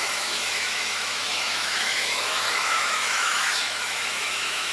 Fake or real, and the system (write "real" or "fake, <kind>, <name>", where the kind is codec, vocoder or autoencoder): fake, autoencoder, DAC-VAE